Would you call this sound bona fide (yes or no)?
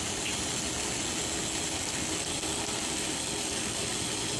yes